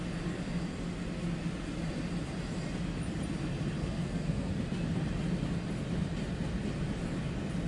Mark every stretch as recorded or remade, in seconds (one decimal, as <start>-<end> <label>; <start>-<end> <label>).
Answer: 0.0-3.8 recorded; 3.8-4.5 remade; 4.5-7.7 recorded